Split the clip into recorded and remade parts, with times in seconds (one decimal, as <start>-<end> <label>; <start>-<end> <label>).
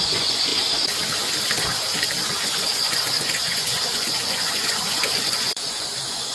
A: 0.0-0.5 remade; 0.5-2.3 recorded; 2.3-6.3 remade